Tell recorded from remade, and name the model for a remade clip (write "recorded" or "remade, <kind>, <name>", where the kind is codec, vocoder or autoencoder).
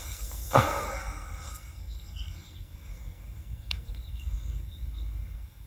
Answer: remade, codec, SNAC